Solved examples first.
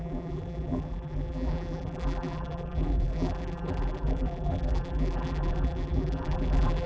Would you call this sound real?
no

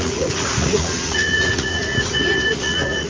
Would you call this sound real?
no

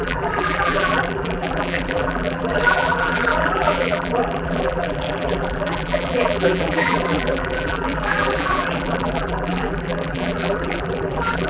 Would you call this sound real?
no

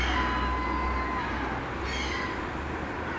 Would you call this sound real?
yes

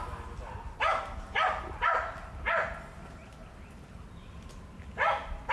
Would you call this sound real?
yes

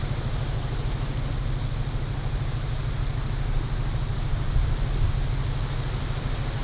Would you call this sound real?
yes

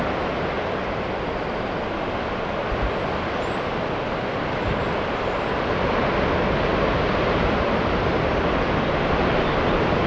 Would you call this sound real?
yes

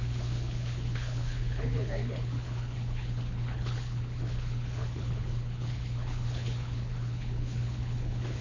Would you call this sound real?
no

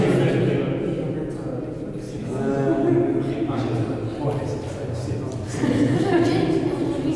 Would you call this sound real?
yes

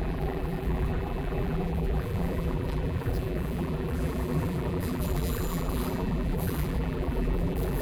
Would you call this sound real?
no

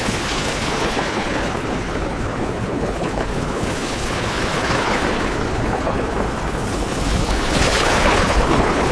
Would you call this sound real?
no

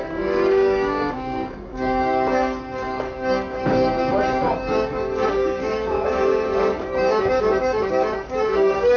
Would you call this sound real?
no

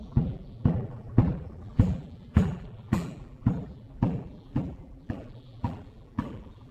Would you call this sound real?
no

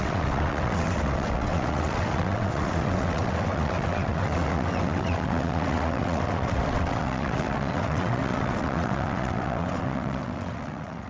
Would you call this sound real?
no